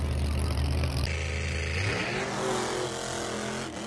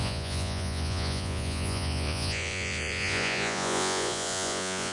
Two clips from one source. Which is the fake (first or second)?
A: second